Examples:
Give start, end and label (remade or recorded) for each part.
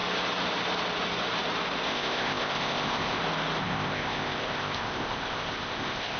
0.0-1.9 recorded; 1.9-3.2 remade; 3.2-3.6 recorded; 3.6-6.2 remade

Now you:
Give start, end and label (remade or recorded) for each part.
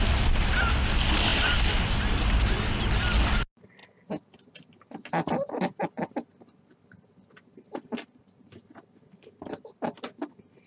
0.0-10.7 recorded